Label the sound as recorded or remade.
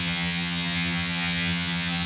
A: remade